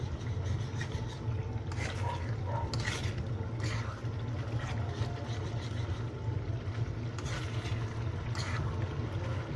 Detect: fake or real real